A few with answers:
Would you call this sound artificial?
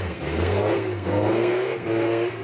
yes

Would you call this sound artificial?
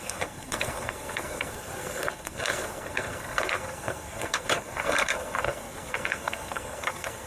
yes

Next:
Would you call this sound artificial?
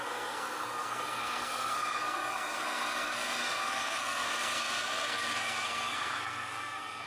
yes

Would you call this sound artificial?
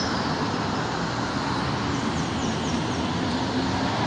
no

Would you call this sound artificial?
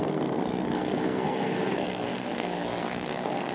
yes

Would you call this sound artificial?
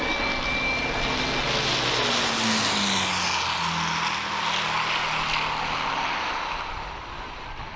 no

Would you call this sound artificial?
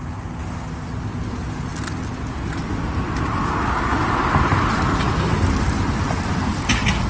no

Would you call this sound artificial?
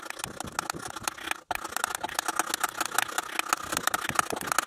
no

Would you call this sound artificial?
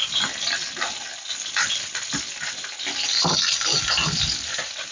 no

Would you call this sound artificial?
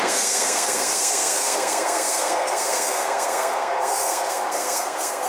yes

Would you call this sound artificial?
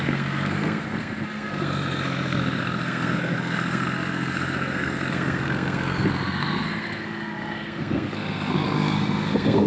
yes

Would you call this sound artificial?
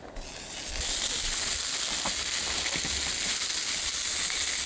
no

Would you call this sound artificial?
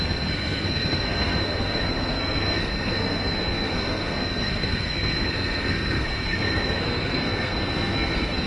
yes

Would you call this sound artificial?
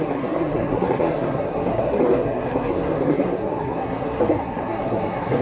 yes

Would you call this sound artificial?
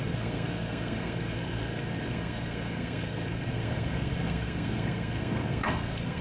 yes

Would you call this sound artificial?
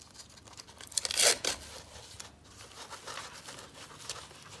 no